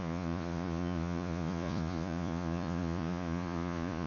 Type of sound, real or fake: fake